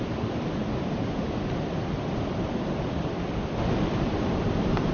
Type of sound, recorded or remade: remade